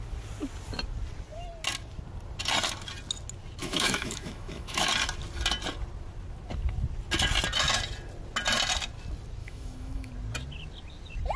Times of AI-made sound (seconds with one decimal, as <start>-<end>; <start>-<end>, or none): 3.6-4.9; 9.4-10.1